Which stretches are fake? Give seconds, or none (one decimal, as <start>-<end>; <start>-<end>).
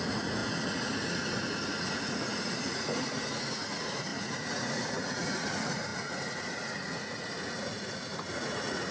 0.0-8.9